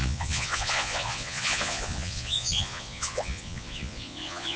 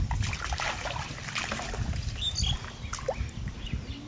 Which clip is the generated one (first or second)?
first